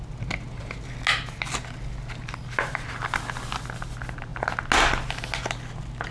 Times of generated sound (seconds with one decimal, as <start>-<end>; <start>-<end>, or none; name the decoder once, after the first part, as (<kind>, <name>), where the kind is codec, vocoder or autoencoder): none